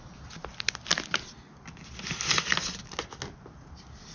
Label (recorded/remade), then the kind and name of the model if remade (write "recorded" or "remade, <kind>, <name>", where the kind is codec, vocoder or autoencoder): recorded